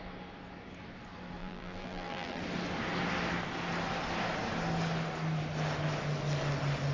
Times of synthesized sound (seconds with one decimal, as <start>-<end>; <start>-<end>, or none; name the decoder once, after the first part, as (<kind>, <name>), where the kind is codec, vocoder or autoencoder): 1.4-2.4 (vocoder, BigVGAN v2)